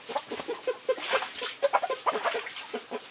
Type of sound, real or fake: real